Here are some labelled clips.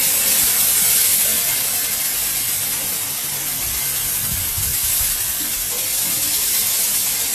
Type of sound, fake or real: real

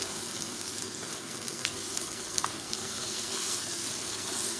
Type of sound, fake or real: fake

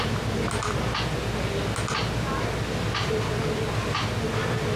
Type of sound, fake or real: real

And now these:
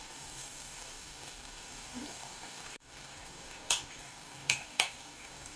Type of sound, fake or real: fake